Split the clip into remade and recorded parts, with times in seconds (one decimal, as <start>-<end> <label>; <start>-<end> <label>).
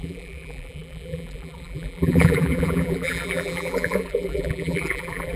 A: 0.0-5.4 remade